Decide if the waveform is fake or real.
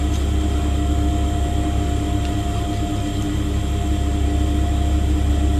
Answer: real